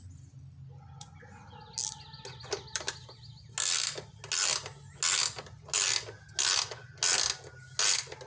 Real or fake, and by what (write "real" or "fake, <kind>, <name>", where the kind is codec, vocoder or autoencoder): real